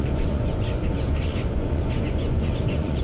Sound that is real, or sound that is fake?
fake